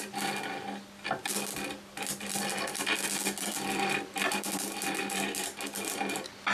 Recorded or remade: recorded